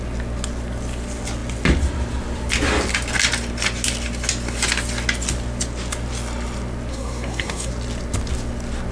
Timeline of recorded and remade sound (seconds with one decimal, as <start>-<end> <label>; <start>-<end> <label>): 0.0-6.9 recorded; 6.9-7.7 remade; 7.7-8.9 recorded